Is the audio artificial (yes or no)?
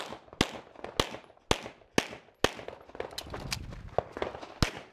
no